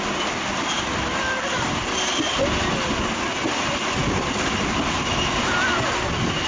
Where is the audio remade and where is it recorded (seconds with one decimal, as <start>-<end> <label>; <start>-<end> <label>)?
0.0-6.5 recorded

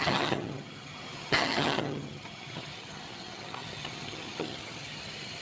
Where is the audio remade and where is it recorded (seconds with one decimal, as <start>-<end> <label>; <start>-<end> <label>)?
0.0-5.4 remade

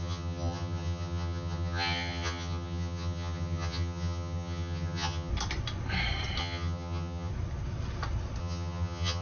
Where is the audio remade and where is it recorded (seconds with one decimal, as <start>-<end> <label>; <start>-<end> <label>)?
0.0-5.3 remade; 5.3-6.4 recorded; 6.4-7.3 remade; 7.3-8.4 recorded; 8.4-9.2 remade

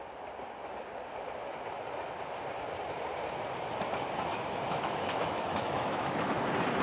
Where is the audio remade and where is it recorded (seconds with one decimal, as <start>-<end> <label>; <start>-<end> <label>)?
0.0-4.3 recorded; 4.3-6.3 remade; 6.3-6.8 recorded